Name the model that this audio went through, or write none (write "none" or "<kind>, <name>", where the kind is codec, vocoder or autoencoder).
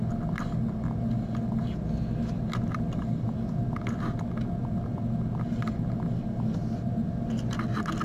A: none